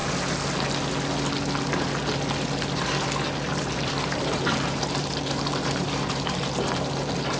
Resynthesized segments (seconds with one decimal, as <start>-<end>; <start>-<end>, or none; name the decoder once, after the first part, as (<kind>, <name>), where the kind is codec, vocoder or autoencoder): 3.5-7.4 (vocoder, BigVGAN v2)